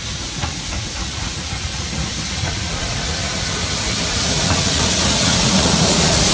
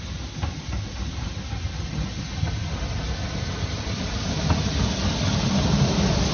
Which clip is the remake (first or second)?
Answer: first